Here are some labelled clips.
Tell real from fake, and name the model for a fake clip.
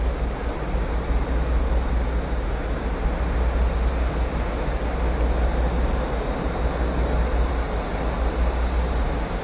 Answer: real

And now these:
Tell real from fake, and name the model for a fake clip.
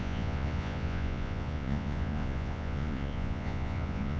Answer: fake, vocoder, Vocos